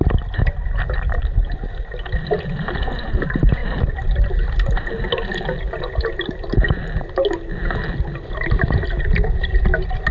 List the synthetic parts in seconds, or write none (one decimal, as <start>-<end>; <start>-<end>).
none